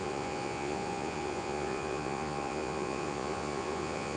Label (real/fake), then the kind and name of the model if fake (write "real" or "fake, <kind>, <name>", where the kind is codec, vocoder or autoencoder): fake, vocoder, Vocos